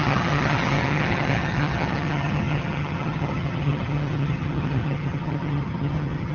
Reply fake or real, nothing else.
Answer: fake